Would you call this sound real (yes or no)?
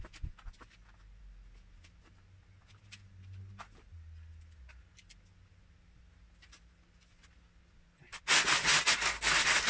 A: yes